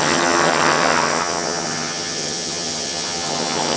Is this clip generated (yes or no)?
yes